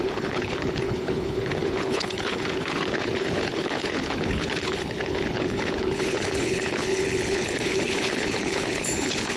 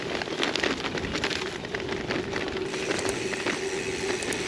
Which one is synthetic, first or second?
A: first